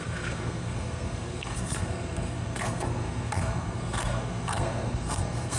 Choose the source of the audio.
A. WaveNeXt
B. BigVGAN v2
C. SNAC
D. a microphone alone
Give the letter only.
C